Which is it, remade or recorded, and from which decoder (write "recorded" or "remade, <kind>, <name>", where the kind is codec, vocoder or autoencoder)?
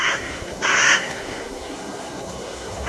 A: remade, codec, SNAC